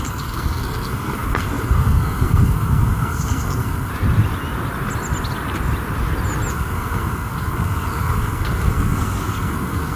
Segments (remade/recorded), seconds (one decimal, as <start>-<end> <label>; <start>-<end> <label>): 0.0-3.9 remade; 3.9-6.5 recorded; 6.5-10.0 remade